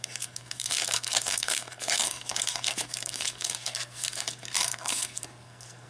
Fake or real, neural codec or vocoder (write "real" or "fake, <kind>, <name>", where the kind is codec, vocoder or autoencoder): fake, codec, SNAC